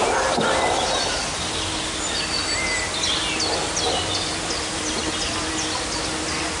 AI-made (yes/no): no